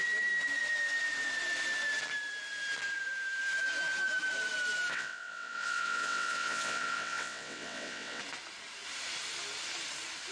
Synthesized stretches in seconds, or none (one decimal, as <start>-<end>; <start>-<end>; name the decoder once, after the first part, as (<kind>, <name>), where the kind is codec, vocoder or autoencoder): 4.9-8.2 (vocoder, WaveNeXt)